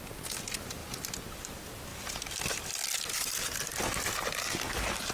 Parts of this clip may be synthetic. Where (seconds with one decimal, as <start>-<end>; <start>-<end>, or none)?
none